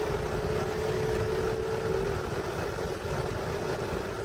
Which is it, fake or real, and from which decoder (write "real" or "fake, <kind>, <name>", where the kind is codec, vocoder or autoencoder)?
real